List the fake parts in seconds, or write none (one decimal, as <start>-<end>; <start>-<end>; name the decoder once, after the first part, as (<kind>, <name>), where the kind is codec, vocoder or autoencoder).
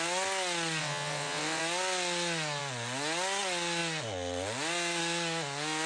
0.8-1.6 (vocoder, WaveNeXt)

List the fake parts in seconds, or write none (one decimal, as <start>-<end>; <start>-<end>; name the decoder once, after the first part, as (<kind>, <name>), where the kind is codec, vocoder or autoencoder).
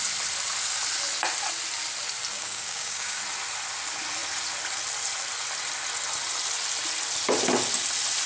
2.3-3.2 (codec, DAC)